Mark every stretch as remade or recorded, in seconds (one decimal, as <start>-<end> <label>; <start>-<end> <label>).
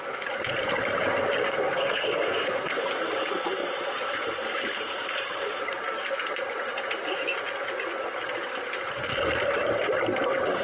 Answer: 0.0-1.4 recorded; 1.4-2.8 remade; 2.8-10.6 recorded